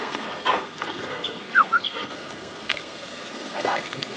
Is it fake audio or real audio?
fake